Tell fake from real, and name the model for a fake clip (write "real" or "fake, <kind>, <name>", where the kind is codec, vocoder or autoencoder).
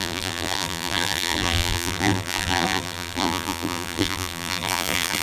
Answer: fake, vocoder, BigVGAN v2